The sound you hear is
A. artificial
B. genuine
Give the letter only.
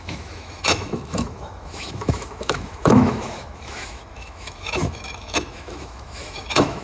A